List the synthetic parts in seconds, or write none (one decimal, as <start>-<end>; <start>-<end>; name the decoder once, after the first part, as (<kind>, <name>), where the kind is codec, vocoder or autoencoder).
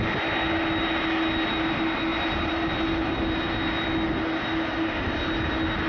none